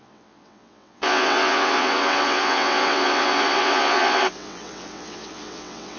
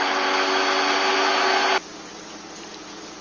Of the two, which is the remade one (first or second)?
first